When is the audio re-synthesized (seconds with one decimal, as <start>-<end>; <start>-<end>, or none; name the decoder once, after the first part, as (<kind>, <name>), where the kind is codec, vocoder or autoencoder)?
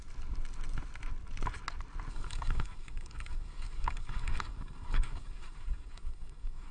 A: 2.1-6.7 (codec, DAC)